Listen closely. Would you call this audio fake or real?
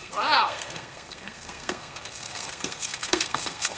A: fake